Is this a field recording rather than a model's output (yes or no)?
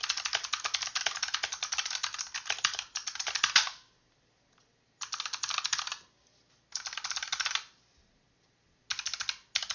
yes